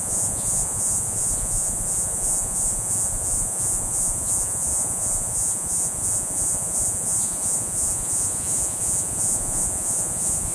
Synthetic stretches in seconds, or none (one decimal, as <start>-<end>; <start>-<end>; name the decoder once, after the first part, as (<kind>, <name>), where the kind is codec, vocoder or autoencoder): 0.0-10.5 (vocoder, Vocos)